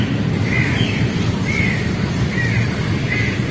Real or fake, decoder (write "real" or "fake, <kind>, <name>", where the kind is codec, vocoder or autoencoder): real